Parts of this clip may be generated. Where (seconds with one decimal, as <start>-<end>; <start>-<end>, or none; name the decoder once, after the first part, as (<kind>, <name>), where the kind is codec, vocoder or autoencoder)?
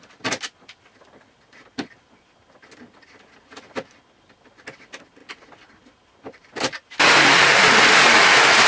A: none